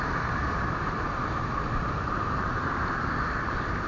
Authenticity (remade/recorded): remade